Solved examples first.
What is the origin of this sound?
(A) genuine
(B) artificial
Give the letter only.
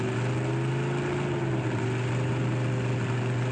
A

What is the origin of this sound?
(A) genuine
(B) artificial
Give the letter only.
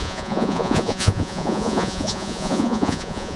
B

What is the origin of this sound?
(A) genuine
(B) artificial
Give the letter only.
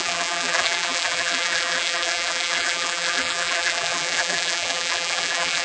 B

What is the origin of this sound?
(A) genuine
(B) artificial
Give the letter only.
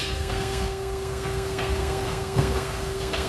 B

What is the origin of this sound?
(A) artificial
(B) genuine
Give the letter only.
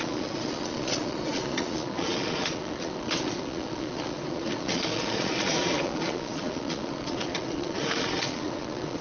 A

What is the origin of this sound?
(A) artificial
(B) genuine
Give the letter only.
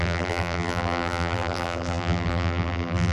A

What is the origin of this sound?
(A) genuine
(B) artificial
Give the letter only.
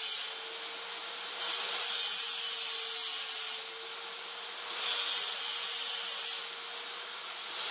A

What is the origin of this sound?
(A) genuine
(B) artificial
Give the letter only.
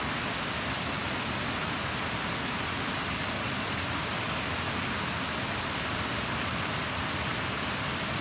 A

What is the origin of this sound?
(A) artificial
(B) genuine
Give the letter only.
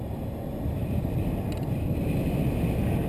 B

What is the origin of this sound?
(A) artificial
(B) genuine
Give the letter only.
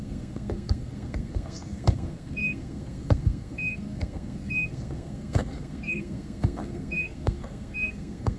A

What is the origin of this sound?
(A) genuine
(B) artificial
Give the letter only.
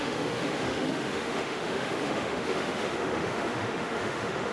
B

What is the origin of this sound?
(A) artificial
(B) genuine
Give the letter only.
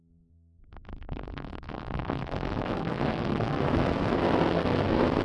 A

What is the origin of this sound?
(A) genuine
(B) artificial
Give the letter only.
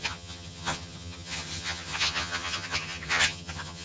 B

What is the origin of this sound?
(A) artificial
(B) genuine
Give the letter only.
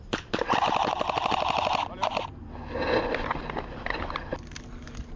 B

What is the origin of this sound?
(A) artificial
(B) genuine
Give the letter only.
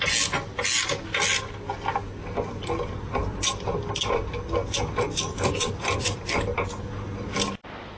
B